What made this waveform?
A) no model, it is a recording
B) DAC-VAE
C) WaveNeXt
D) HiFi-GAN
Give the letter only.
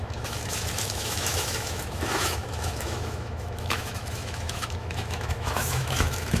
B